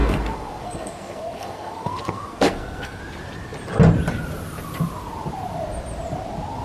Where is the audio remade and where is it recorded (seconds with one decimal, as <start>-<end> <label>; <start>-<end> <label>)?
0.0-3.0 remade; 3.0-6.6 recorded